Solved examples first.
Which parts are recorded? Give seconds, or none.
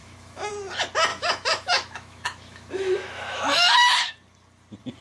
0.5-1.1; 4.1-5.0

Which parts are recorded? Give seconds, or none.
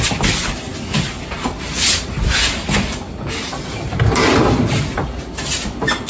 0.0-6.1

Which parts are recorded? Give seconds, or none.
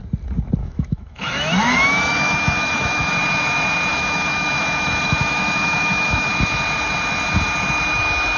0.0-0.6; 3.1-3.9; 6.3-8.4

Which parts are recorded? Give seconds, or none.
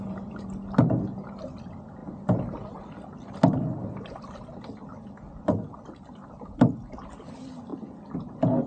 0.0-8.7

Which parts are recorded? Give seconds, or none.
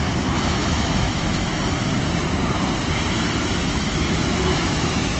1.5-3.6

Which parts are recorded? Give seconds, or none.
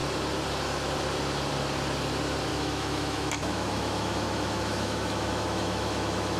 0.0-2.5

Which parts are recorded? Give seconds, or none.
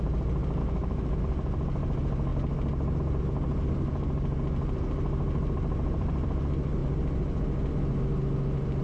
0.0-0.6; 1.2-8.8